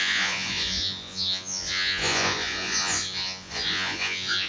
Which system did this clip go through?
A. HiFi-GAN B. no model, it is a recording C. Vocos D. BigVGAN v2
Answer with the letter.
C